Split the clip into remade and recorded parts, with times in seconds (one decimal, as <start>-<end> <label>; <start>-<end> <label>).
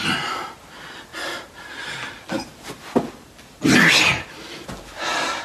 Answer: 0.0-5.4 recorded